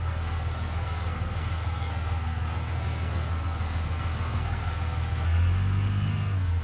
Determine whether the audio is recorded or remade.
remade